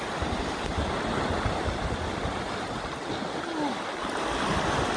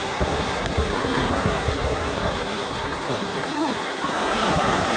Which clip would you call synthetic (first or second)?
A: second